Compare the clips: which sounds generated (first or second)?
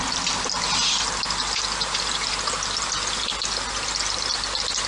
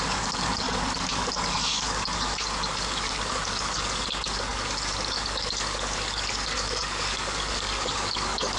second